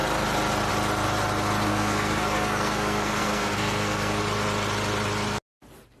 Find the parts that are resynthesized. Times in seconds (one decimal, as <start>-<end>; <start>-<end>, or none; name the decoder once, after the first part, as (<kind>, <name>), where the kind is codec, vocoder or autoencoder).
1.7-4.2 (codec, SNAC)